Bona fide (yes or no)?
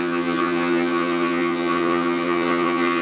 no